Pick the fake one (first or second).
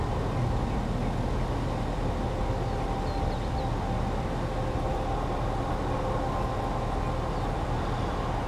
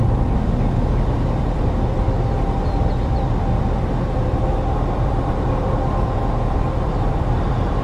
second